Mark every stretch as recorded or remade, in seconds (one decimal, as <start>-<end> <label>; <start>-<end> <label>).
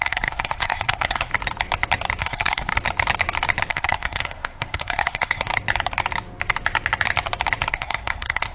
0.0-1.3 remade; 1.3-2.2 recorded; 2.2-2.7 remade; 2.7-3.7 recorded; 3.7-5.5 remade; 5.5-7.7 recorded; 7.7-8.5 remade